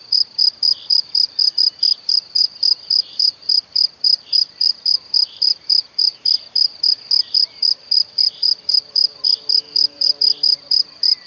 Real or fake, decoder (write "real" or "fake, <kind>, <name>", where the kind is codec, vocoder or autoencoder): fake, vocoder, BigVGAN v2